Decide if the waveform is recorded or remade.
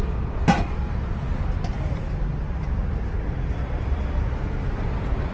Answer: recorded